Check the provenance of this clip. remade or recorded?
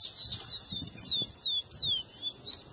recorded